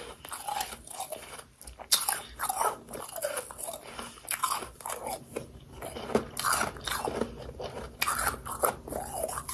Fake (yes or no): no